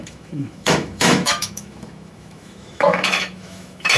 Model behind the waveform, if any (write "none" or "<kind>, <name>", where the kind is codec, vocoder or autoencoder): autoencoder, DAC-VAE